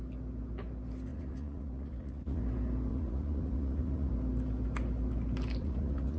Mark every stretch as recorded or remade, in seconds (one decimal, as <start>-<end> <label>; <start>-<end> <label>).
0.0-1.1 recorded; 1.1-2.4 remade; 2.4-2.9 recorded; 2.9-4.1 remade; 4.1-5.6 recorded; 5.6-6.2 remade